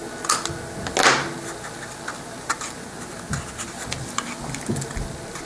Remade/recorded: recorded